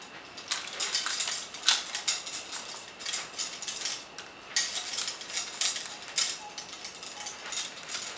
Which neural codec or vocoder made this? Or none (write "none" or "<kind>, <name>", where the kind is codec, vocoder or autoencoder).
none